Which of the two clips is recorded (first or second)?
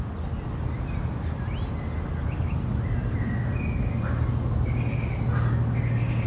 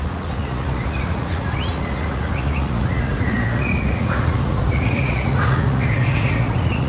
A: first